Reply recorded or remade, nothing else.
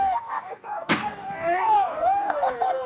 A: remade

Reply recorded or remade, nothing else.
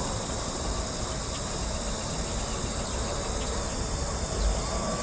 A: recorded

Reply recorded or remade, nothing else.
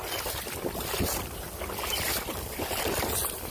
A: recorded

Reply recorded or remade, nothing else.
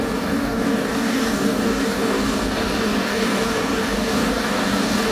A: remade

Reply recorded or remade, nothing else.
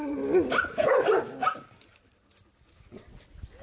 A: recorded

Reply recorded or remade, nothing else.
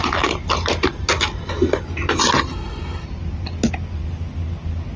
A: recorded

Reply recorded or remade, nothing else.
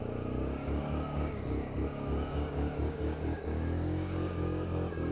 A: remade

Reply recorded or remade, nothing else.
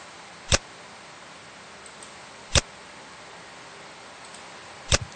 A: recorded